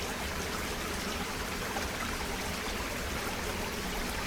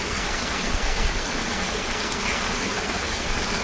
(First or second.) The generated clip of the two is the second